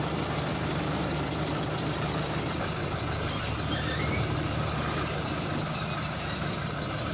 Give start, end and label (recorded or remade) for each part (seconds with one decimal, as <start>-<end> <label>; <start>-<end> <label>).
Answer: 0.0-0.5 recorded; 0.5-4.8 remade; 4.8-6.4 recorded; 6.4-7.1 remade

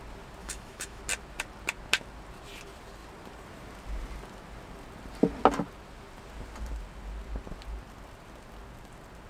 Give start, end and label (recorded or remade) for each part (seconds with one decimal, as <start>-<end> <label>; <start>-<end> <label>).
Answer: 0.0-0.4 recorded; 0.4-1.0 remade; 1.0-9.3 recorded

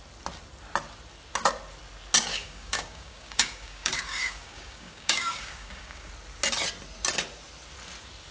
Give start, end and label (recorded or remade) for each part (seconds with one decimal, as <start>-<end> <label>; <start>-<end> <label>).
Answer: 0.0-2.3 recorded; 2.3-6.1 remade; 6.1-8.3 recorded

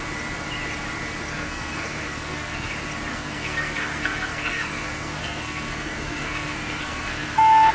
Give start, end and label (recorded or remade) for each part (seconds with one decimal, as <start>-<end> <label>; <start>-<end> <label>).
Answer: 0.0-1.3 recorded; 1.3-2.7 remade; 2.7-3.1 recorded; 3.1-7.7 remade

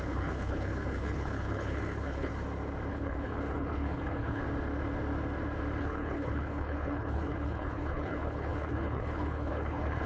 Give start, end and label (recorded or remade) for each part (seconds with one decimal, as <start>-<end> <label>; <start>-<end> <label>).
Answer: 0.0-2.3 remade; 2.3-2.9 recorded; 2.9-4.4 remade; 4.4-5.8 recorded; 5.8-10.1 remade

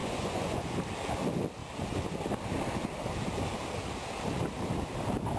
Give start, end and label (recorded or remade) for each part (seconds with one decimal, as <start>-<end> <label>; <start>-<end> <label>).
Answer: 0.0-0.8 remade; 0.8-5.4 recorded

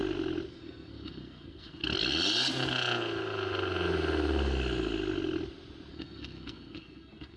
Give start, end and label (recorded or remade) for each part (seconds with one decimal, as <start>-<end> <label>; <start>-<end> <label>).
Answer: 0.0-0.5 recorded; 0.5-1.8 remade; 1.8-5.9 recorded; 5.9-7.4 remade

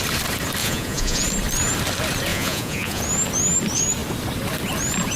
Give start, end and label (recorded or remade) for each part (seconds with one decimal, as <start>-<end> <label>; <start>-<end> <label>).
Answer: 0.0-0.6 recorded; 0.6-1.2 remade; 1.2-2.3 recorded; 2.3-3.0 remade; 3.0-5.2 recorded